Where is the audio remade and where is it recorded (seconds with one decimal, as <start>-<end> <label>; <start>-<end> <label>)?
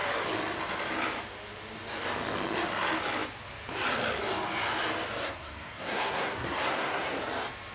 0.0-5.2 recorded; 5.2-7.2 remade; 7.2-7.7 recorded